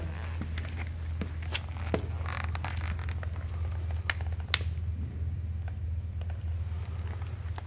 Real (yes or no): yes